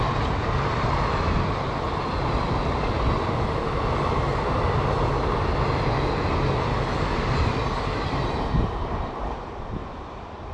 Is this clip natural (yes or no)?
yes